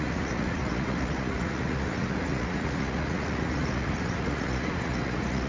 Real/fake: fake